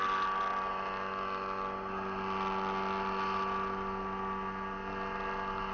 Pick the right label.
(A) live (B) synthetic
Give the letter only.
A